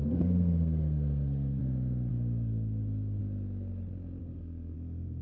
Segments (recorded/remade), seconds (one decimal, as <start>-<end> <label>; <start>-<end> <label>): 0.0-1.6 remade; 1.6-2.1 recorded; 2.1-3.2 remade; 3.2-4.2 recorded; 4.2-5.2 remade